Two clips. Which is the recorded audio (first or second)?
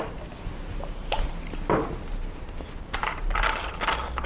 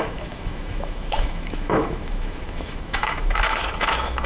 first